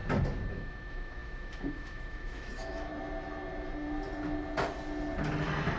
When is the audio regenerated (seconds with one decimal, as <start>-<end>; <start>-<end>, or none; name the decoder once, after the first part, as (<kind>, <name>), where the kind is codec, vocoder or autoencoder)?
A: 0.5-2.9 (autoencoder, DAC-VAE)